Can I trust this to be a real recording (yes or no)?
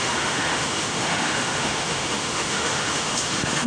no